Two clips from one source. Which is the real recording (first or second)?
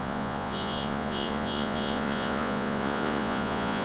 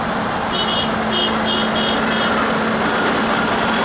second